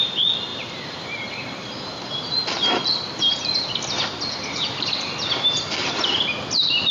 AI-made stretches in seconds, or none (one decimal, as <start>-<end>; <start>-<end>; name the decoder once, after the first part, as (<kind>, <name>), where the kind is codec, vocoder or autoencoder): 0.5-2.1 (vocoder, BigVGAN v2)